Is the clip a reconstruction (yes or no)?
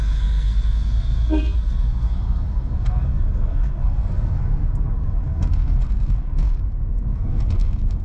yes